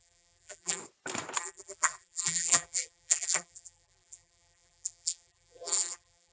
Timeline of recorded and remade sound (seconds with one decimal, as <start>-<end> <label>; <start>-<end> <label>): 0.0-0.8 remade; 0.8-1.4 recorded; 1.4-6.3 remade